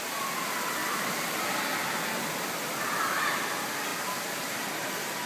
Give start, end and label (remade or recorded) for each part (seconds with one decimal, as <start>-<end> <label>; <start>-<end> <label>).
0.0-0.8 recorded; 0.8-1.7 remade; 1.7-3.9 recorded; 3.9-4.7 remade; 4.7-5.3 recorded